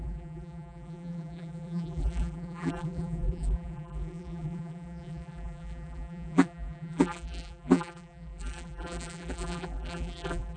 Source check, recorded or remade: remade